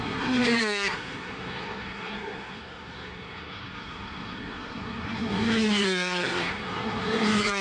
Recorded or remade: remade